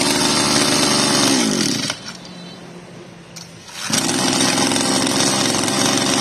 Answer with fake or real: real